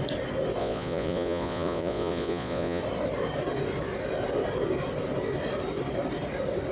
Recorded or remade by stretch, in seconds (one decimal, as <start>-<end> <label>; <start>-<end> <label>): 0.0-0.6 recorded; 0.6-2.8 remade; 2.8-6.7 recorded